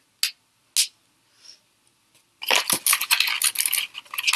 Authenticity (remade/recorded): recorded